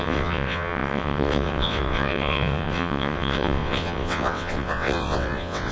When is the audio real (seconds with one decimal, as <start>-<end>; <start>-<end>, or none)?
none